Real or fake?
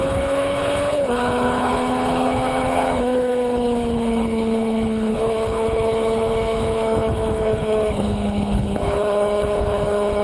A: fake